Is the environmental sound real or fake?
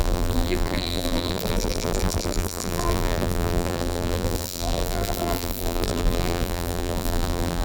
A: fake